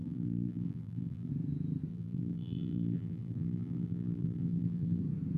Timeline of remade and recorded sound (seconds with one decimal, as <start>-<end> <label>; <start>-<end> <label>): 0.0-1.3 remade; 1.3-1.9 recorded; 1.9-5.0 remade; 5.0-5.4 recorded